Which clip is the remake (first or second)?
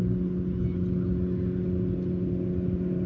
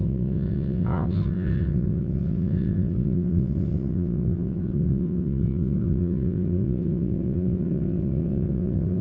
second